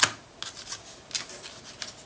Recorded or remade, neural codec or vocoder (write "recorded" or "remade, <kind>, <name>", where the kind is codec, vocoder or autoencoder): recorded